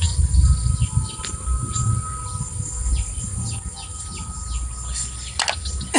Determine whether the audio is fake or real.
real